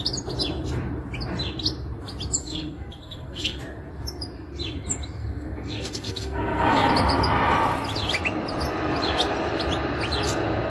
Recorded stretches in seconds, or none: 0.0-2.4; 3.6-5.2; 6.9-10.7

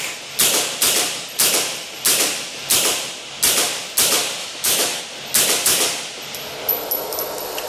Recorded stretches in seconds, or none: 0.0-4.4; 5.0-7.7

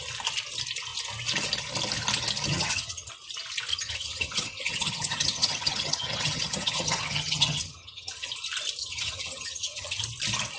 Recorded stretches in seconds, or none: 0.0-2.5; 3.1-3.7; 8.3-8.8; 10.0-10.6

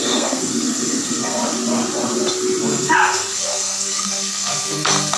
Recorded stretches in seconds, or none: 1.4-2.6

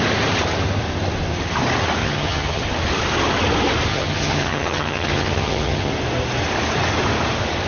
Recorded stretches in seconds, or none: 0.0-2.0; 2.6-3.9; 5.9-7.7

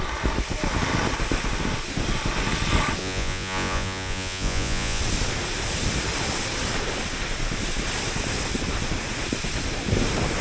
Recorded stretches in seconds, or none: 0.0-3.0; 5.0-10.4